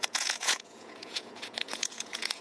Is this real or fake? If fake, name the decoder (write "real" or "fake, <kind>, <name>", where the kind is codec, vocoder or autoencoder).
fake, vocoder, Vocos